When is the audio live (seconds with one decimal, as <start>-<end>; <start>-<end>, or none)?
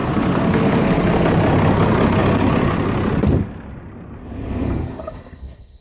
1.0-4.2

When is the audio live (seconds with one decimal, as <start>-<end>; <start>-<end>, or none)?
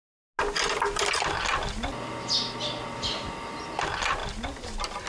0.0-5.1